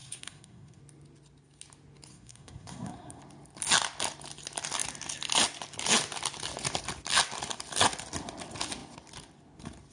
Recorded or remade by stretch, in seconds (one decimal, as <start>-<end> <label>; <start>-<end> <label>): 0.0-0.8 remade; 0.8-2.1 recorded; 2.1-3.2 remade; 3.2-9.9 recorded